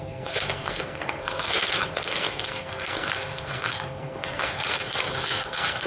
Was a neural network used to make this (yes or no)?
yes